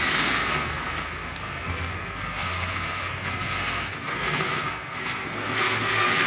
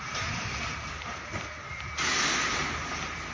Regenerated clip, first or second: first